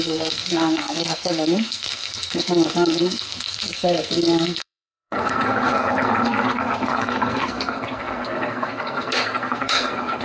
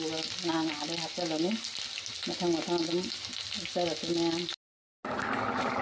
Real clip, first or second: second